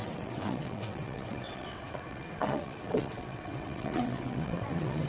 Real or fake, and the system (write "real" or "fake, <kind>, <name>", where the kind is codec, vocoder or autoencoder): fake, vocoder, WaveNeXt